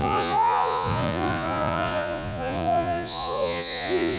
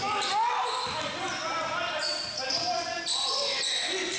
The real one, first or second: second